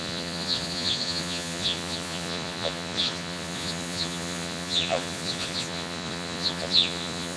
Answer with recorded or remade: remade